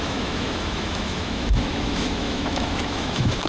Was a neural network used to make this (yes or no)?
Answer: yes